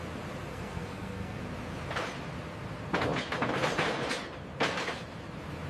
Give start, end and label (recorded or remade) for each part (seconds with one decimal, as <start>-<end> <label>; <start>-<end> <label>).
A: 0.0-0.5 recorded; 0.5-1.4 remade; 1.4-5.7 recorded